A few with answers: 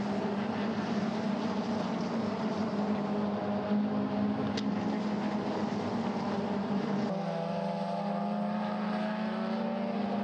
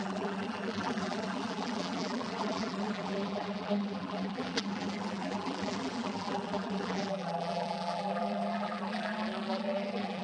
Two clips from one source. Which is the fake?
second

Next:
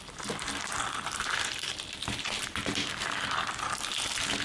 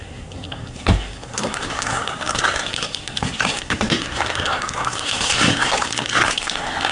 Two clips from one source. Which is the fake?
second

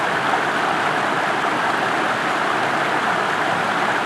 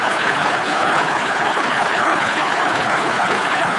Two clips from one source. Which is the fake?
second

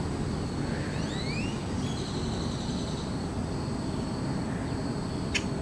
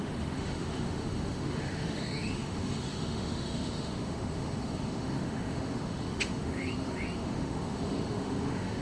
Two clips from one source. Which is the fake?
second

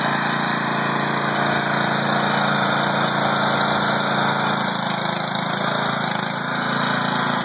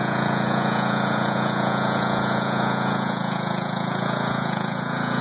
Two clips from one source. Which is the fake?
second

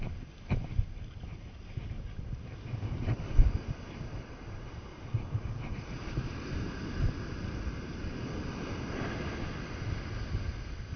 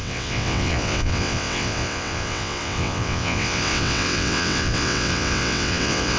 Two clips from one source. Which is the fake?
second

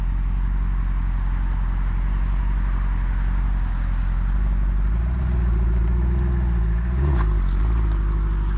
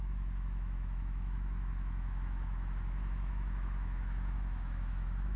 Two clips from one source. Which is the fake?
second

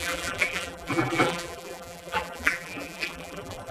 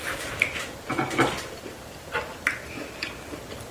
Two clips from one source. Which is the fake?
first